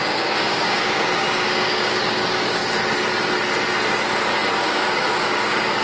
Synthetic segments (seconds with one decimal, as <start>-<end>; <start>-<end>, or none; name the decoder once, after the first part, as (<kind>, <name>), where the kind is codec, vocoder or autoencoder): 0.0-2.6 (codec, DAC); 4.5-5.8